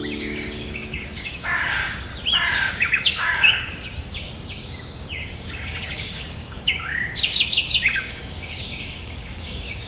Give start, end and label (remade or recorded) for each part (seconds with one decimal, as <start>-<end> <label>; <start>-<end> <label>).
0.0-2.1 remade; 2.1-2.7 recorded; 2.7-9.9 remade